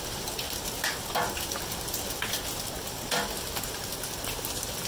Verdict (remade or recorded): recorded